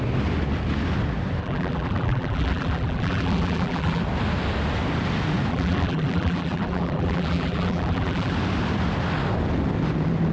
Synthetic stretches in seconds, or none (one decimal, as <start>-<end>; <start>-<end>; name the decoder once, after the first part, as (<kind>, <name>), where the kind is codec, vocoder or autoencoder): 1.4-4.0 (vocoder, BigVGAN v2); 5.5-8.3